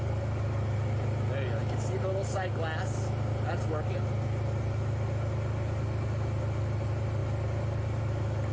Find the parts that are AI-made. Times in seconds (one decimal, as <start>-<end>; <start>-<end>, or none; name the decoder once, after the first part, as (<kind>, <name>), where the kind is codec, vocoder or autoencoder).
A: none